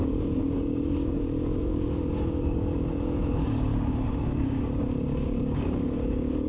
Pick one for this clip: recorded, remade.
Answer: remade